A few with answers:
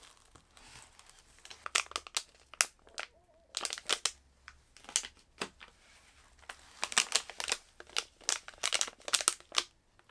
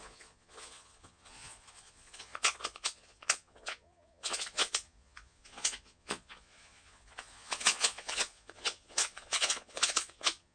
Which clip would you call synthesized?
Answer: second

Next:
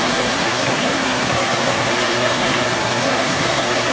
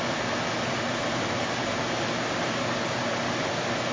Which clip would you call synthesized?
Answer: first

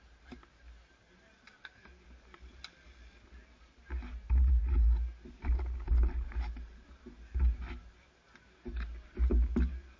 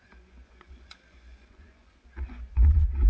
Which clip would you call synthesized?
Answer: second